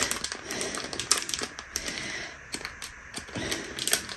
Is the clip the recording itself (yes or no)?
yes